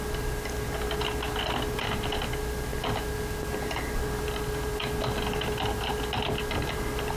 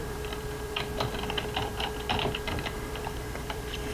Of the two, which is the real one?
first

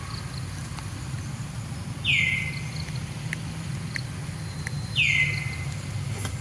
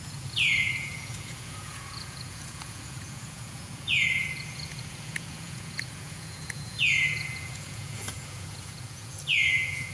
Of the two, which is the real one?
first